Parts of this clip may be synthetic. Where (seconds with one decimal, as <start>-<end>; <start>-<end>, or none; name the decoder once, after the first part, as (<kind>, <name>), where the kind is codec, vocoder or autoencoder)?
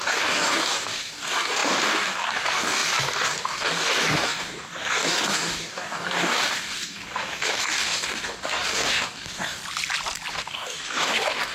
0.0-9.6 (codec, DAC); 10.3-11.5